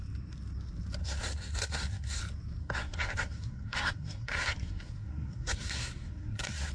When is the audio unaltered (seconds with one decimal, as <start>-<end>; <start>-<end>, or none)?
0.0-1.0; 2.2-2.6